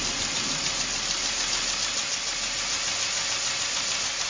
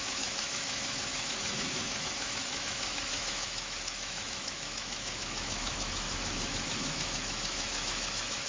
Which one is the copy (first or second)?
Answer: second